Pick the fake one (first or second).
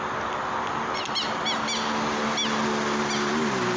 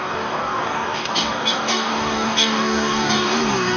second